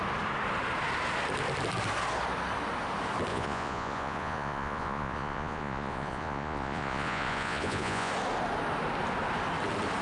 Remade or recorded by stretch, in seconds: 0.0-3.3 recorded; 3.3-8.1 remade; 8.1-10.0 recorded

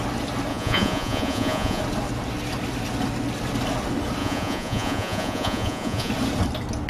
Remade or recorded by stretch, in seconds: 0.0-0.5 recorded; 0.5-1.8 remade; 1.8-4.2 recorded; 4.2-6.1 remade; 6.1-6.9 recorded

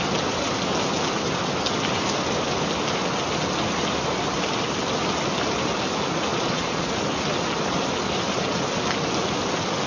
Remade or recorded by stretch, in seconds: 0.0-6.3 recorded; 6.3-6.9 remade; 6.9-9.9 recorded

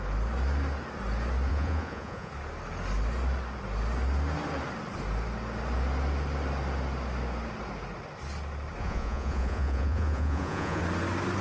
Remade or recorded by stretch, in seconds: 0.0-1.5 recorded; 1.5-2.3 remade; 2.3-8.8 recorded; 8.8-10.8 remade; 10.8-11.4 recorded

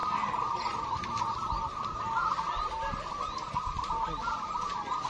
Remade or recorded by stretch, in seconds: 0.0-5.1 recorded

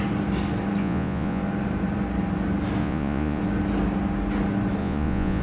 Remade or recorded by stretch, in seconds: 0.0-0.8 recorded; 0.8-1.4 remade; 1.4-2.8 recorded; 2.8-3.4 remade; 3.4-4.8 recorded; 4.8-5.4 remade